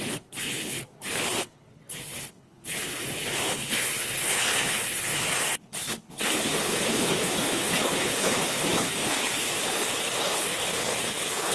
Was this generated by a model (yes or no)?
yes